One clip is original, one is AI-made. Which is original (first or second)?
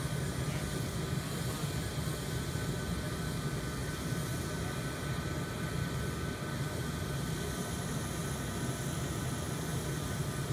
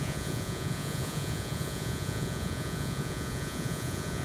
first